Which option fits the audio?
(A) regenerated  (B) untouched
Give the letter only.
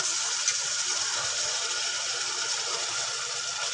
B